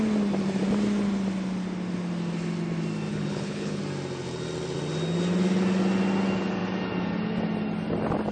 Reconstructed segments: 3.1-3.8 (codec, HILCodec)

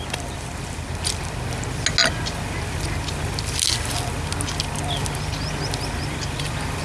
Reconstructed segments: none